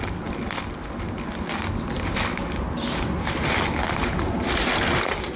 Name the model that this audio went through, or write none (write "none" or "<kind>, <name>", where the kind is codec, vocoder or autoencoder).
none